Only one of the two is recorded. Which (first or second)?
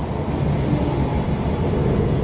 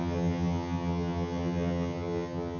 first